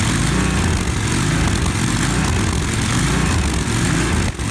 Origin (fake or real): real